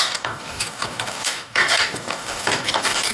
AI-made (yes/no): yes